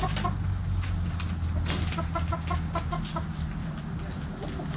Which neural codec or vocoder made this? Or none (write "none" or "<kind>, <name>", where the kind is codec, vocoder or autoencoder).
none